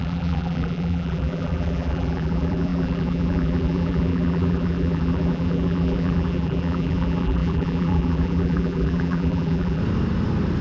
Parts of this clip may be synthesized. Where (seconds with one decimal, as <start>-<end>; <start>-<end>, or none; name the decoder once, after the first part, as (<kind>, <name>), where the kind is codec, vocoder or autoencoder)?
0.0-9.8 (vocoder, BigVGAN v2)